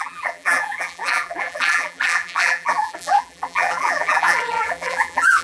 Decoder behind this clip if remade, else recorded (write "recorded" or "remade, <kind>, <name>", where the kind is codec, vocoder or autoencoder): remade, vocoder, BigVGAN v2